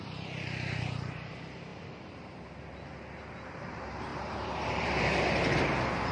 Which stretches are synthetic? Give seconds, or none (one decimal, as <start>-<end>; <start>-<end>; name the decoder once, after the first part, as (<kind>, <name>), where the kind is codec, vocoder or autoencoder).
0.0-1.7 (vocoder, BigVGAN v2); 3.6-6.1